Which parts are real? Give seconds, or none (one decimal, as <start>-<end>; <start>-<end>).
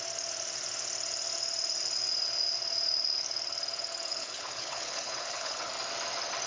0.0-4.1; 5.7-6.5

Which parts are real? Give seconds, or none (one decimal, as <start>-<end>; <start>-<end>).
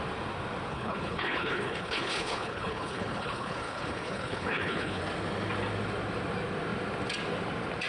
0.0-0.7; 5.0-7.9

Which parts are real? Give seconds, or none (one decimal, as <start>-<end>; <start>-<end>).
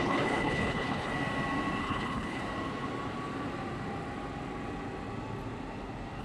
1.1-1.8; 2.4-6.2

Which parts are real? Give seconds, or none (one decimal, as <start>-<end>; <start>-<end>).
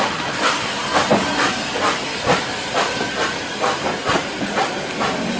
0.0-5.4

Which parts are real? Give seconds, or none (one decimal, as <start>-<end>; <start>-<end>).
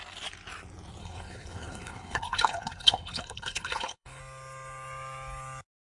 0.0-1.0; 4.2-5.9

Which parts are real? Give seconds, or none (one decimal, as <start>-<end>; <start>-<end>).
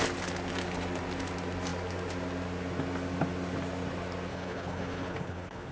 0.0-4.3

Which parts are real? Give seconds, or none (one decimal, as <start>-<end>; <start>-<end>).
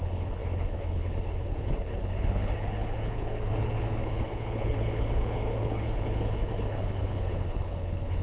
none